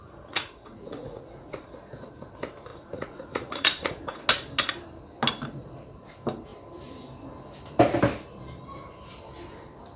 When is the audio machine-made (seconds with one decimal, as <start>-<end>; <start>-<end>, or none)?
0.0-1.7; 2.7-4.2